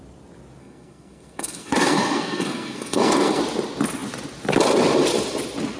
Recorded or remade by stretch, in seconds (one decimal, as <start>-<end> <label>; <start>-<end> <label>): 0.0-0.6 recorded; 0.6-3.4 remade; 3.4-5.8 recorded